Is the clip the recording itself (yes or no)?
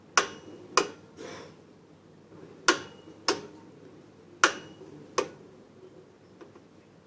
yes